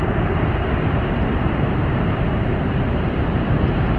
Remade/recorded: remade